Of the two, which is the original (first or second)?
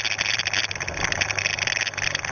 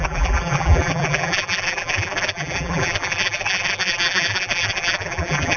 first